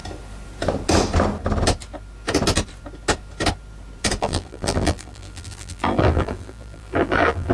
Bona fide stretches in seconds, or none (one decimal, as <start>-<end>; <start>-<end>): 0.0-4.2